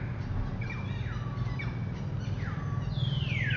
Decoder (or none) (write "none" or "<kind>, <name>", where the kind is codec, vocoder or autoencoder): none